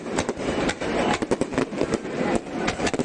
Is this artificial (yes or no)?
yes